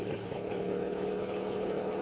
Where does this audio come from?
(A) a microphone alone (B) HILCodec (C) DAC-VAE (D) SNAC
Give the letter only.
B